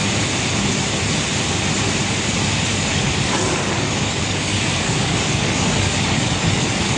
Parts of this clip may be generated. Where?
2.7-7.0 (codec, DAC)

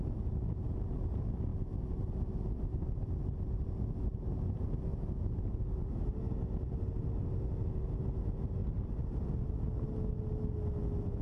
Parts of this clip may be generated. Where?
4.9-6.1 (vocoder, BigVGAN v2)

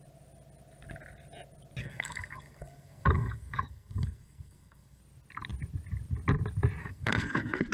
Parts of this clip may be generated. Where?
1.8-5.0 (codec, SNAC); 6.8-7.7

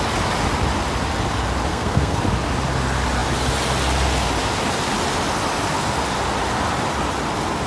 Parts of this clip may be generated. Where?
1.7-2.2 (codec, SNAC)

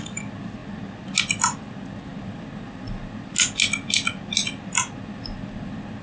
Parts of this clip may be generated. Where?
0.0-0.6 (vocoder, BigVGAN v2); 1.2-2.1

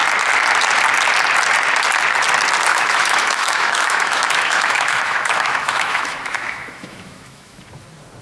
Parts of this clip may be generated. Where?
2.7-7.6 (autoencoder, DAC-VAE)

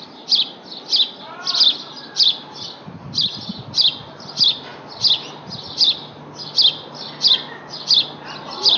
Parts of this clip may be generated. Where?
none

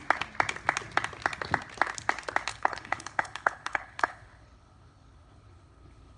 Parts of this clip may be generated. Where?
2.5-6.2 (codec, HILCodec)